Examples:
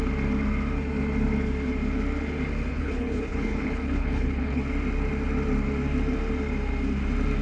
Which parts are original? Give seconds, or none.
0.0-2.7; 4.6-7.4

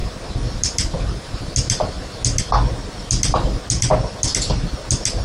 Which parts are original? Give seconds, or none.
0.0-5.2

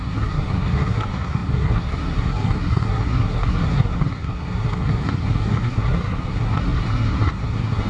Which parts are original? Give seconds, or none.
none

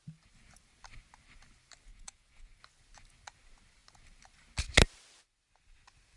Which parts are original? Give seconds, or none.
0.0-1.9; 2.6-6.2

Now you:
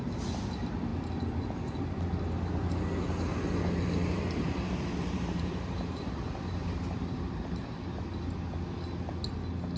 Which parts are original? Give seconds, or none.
0.0-4.0; 7.8-9.8